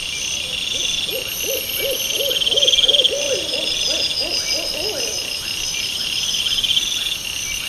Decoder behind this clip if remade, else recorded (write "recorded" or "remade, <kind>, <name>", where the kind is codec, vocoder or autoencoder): recorded